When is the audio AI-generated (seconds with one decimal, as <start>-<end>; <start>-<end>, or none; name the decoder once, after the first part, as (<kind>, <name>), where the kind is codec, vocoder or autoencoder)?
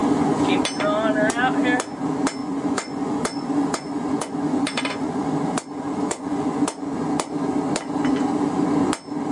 0.0-0.5 (vocoder, Vocos); 2.4-7.1